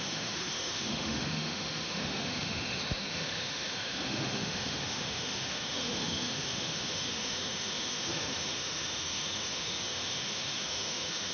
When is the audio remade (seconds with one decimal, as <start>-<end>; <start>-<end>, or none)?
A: 0.0-11.3